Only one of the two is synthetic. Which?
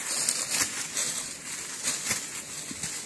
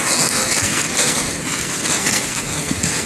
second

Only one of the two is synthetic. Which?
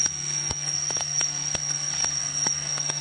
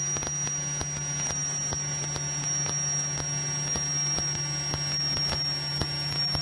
first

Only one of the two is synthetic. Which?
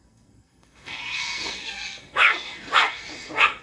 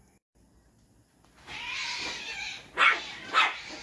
first